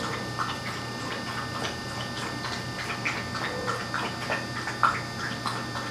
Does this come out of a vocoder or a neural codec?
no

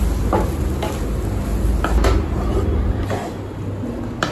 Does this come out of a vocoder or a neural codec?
no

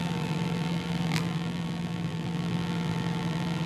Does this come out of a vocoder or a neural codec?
yes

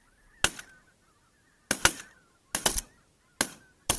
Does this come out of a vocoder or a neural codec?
no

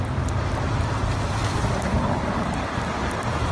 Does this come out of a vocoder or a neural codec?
no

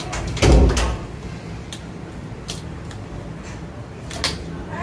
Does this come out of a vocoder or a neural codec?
no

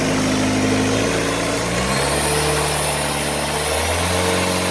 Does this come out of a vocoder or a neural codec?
no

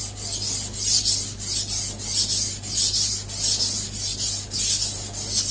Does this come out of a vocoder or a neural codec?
no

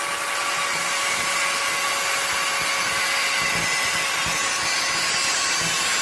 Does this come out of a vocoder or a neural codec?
no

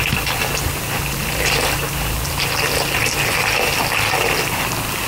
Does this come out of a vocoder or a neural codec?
no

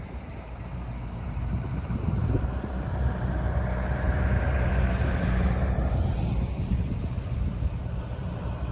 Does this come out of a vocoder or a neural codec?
yes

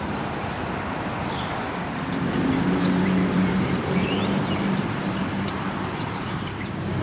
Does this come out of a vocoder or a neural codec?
yes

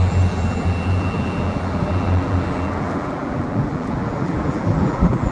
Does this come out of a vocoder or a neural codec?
yes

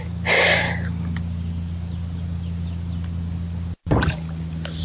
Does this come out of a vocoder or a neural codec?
no